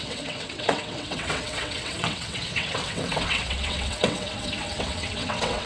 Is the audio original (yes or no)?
no